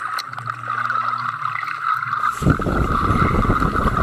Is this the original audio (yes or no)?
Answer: yes